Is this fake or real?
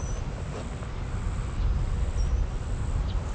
real